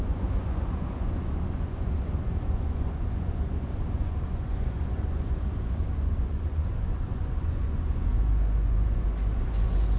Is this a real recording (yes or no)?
no